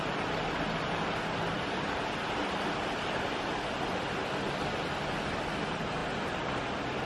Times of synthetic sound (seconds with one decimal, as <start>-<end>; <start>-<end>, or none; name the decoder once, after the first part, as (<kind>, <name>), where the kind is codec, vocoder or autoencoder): none